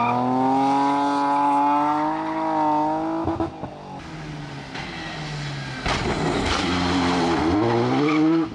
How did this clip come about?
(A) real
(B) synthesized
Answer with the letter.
A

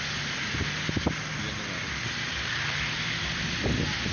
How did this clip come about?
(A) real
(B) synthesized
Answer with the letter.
A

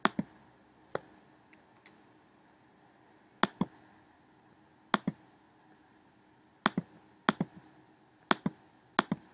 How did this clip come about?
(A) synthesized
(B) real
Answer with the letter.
B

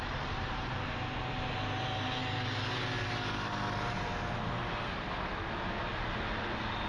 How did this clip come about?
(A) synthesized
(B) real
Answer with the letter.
B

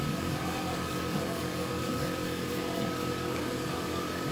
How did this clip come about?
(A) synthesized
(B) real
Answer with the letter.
A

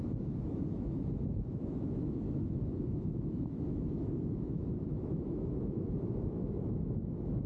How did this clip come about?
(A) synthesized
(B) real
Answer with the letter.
A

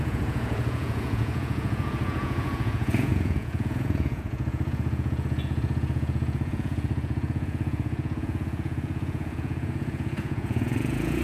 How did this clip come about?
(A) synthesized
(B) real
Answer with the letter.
A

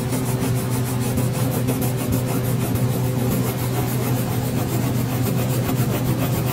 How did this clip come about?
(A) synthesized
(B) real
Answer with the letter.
B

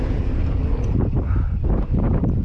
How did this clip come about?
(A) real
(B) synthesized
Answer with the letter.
A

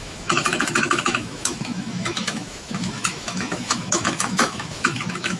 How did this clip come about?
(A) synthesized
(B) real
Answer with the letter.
A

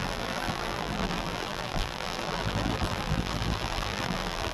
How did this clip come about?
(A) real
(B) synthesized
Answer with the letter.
B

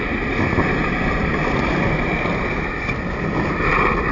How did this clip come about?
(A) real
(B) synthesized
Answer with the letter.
A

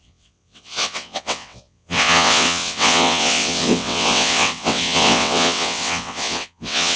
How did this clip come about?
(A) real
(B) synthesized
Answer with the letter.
B